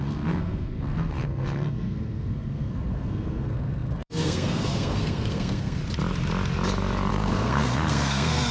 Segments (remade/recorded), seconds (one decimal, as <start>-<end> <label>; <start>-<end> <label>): 0.0-5.8 remade; 5.8-7.1 recorded; 7.1-8.5 remade